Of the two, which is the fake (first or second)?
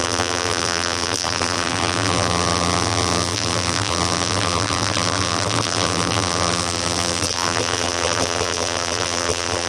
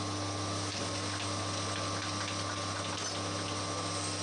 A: first